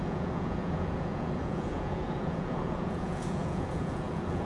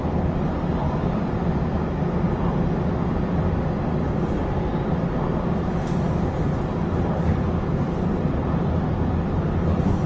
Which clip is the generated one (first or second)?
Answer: first